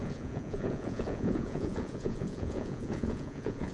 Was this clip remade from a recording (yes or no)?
yes